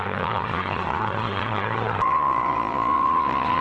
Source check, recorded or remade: remade